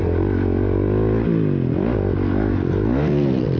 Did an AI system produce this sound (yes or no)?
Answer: no